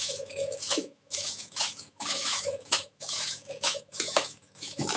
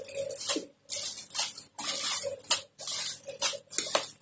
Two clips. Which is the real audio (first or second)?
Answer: second